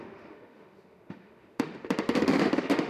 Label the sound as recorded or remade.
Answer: remade